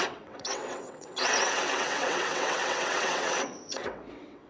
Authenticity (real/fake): fake